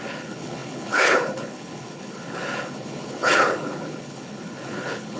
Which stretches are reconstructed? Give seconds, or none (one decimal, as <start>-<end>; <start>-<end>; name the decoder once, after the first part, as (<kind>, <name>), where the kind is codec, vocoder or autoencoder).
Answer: 0.0-5.2 (codec, HILCodec)